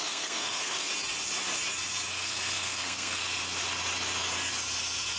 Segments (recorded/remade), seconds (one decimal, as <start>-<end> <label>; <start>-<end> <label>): 0.0-0.9 remade; 0.9-2.1 recorded; 2.1-3.2 remade; 3.2-5.2 recorded

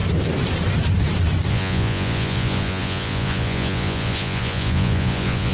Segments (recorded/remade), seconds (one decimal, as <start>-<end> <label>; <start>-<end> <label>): 0.0-1.5 recorded; 1.5-5.5 remade

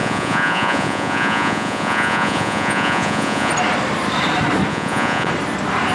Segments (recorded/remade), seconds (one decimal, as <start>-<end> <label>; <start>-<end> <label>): 0.0-3.5 remade; 3.5-4.7 recorded; 4.7-5.3 remade; 5.3-5.9 recorded